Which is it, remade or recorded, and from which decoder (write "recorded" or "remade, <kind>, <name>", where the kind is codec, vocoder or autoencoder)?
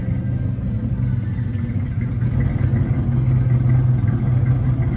recorded